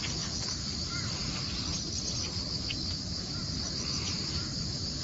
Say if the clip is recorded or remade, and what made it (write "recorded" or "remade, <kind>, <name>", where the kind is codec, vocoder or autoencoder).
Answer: recorded